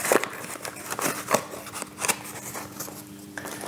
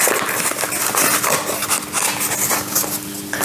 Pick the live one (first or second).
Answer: second